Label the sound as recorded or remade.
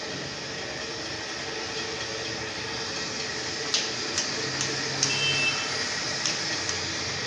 recorded